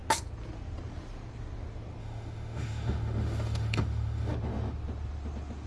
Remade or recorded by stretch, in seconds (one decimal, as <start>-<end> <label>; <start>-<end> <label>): 0.0-2.0 recorded; 2.0-4.3 remade; 4.3-5.7 recorded